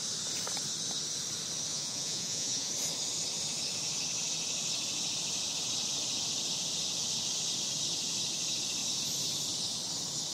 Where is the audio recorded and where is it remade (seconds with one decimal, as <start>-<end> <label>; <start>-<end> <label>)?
0.0-1.7 recorded; 1.7-2.7 remade; 2.7-10.3 recorded